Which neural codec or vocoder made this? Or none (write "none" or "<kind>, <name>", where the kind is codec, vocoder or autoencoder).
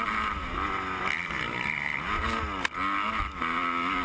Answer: none